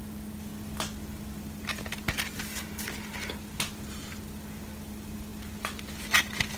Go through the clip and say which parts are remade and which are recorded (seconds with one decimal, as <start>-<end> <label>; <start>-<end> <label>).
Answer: 0.0-6.6 recorded